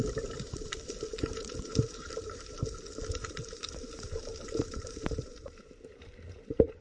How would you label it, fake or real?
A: fake